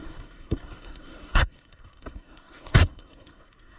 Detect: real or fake fake